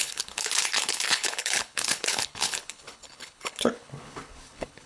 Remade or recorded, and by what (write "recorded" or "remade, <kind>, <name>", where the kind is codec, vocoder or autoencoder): remade, codec, HILCodec